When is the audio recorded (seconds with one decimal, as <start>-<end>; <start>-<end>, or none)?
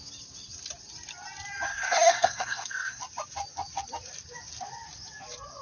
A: 0.0-1.7; 3.0-5.6